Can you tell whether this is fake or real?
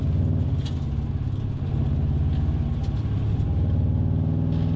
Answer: real